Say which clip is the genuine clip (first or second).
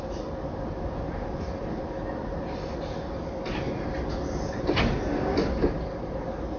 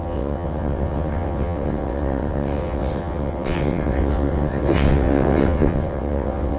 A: first